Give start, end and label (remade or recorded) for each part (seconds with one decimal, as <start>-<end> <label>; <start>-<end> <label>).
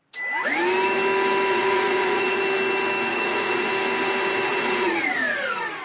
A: 0.0-1.5 recorded; 1.5-2.4 remade; 2.4-3.1 recorded; 3.1-3.7 remade; 3.7-4.5 recorded; 4.5-5.8 remade